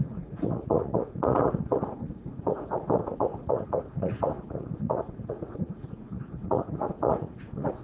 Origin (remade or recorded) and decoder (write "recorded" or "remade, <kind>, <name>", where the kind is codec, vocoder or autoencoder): remade, vocoder, Vocos